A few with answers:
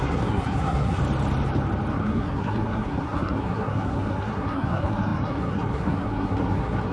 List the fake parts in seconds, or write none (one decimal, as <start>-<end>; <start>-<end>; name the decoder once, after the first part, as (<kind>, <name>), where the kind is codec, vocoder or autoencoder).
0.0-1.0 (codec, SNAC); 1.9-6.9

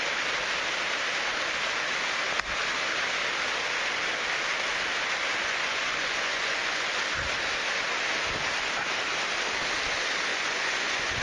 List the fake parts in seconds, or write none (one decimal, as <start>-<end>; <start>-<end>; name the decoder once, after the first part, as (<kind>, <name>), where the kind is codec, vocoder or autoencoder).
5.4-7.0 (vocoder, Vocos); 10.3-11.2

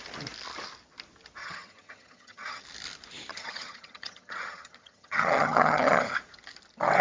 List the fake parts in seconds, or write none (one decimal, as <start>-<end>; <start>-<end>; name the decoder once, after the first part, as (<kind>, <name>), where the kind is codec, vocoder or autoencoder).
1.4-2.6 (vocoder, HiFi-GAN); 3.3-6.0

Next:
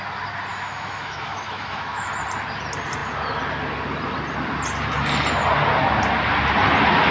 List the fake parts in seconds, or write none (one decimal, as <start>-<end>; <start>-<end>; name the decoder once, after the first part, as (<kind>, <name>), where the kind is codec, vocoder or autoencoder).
0.5-2.1 (autoencoder, DAC-VAE)

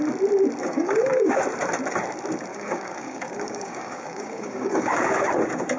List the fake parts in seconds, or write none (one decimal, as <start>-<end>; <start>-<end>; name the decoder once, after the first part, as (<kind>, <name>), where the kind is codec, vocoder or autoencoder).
0.6-1.4 (codec, DAC); 2.5-5.0